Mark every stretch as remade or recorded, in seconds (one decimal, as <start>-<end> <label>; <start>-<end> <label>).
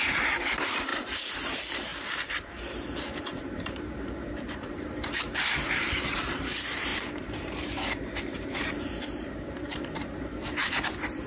0.0-11.3 remade